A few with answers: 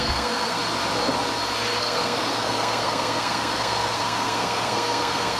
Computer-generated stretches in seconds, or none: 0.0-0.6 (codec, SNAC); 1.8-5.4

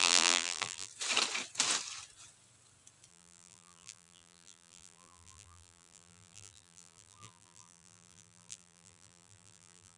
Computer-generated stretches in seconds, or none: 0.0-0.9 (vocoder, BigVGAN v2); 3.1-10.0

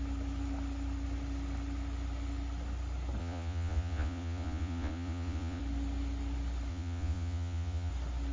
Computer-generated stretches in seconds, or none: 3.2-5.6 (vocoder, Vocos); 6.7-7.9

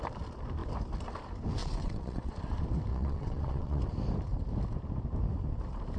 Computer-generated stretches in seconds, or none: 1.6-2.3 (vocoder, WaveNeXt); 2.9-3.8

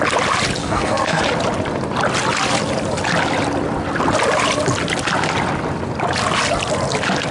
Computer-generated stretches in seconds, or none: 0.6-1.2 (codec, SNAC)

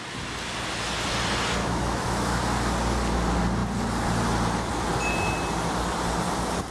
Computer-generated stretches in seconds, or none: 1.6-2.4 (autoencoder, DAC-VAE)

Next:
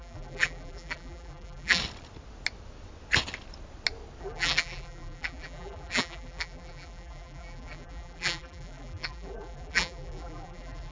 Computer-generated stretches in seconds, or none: 0.0-1.8 (vocoder, BigVGAN v2); 4.2-10.9